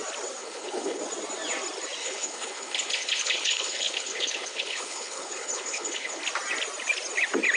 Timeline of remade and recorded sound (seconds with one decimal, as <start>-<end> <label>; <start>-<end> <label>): 0.0-0.4 recorded; 0.4-1.0 remade; 1.0-2.0 recorded; 2.0-6.2 remade; 6.2-7.6 recorded